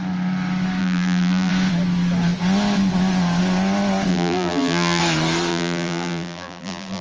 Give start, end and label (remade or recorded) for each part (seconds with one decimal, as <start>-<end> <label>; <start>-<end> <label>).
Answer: 0.0-0.8 recorded; 0.8-1.5 remade; 1.5-4.1 recorded; 4.1-5.0 remade; 5.0-5.5 recorded; 5.5-7.0 remade

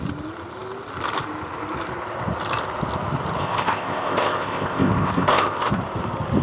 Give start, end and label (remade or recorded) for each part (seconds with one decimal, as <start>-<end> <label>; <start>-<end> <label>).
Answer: 0.0-3.4 recorded; 3.4-5.8 remade; 5.8-6.4 recorded

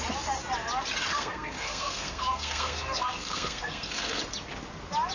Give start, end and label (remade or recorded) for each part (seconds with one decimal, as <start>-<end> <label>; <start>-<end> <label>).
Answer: 0.0-1.1 recorded; 1.1-4.2 remade; 4.2-5.1 recorded

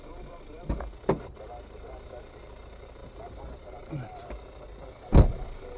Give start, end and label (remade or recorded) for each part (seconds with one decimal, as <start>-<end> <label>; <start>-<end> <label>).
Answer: 0.0-3.0 recorded; 3.0-4.3 remade; 4.3-5.8 recorded

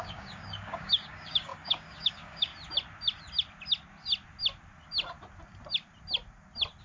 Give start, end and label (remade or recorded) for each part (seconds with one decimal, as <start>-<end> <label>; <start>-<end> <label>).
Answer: 0.0-2.5 remade; 2.5-6.8 recorded

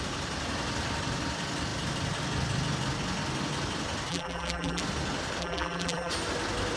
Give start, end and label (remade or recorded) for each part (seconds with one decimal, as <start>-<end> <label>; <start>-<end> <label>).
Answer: 0.0-4.1 recorded; 4.1-4.8 remade; 4.8-5.4 recorded; 5.4-6.1 remade; 6.1-6.8 recorded

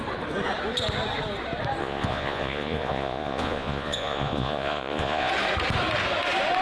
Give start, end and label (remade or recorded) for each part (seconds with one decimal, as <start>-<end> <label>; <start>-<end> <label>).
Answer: 0.0-1.8 recorded; 1.8-5.3 remade; 5.3-6.6 recorded